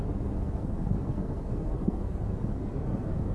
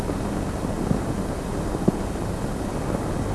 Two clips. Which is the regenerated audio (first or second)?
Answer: first